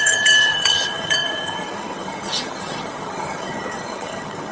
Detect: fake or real fake